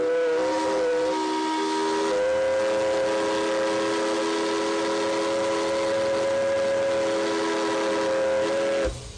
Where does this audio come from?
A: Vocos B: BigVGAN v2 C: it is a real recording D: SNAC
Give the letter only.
C